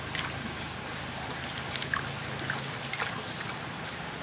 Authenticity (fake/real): real